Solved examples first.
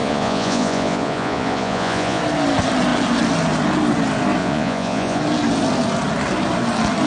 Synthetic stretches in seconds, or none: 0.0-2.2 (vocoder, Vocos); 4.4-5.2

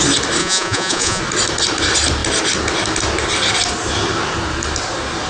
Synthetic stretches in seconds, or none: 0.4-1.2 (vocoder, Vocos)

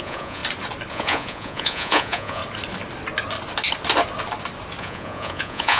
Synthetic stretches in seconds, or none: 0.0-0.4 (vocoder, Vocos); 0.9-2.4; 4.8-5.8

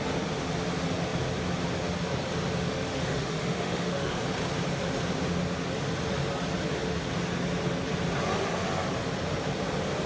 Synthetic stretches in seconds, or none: 2.7-4.2 (autoencoder, DAC-VAE)

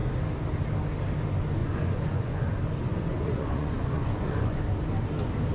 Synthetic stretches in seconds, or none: 1.6-2.5 (vocoder, Vocos); 2.9-4.6

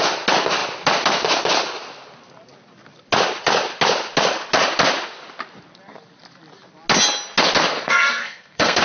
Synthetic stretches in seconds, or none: 7.7-8.8 (codec, SNAC)